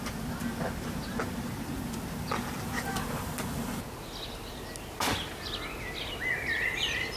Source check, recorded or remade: recorded